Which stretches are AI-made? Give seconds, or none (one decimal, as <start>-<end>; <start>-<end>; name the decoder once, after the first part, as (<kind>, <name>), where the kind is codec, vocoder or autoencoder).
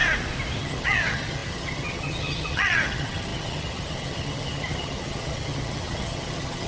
0.6-6.7 (vocoder, HiFi-GAN)